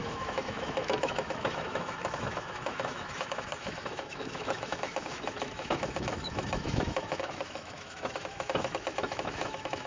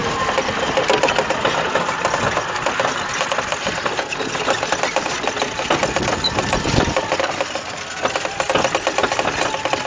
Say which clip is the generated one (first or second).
first